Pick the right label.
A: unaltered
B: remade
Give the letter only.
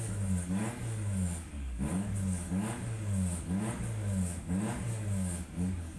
B